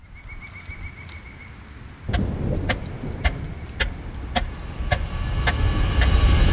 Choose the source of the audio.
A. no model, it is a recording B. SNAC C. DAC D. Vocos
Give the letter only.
A